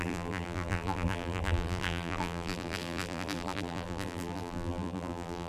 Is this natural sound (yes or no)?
no